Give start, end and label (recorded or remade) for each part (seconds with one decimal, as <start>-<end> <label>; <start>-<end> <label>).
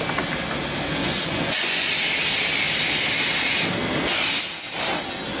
0.0-1.0 recorded; 1.0-1.9 remade; 1.9-5.4 recorded